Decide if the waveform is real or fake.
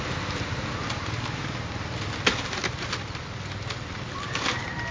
real